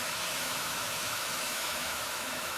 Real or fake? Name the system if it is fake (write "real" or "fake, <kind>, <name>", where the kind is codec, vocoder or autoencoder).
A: fake, autoencoder, DAC-VAE